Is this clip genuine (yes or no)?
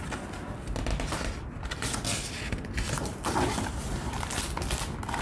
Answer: yes